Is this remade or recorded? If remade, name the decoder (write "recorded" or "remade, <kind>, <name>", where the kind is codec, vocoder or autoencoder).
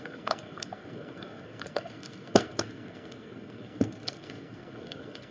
remade, codec, SNAC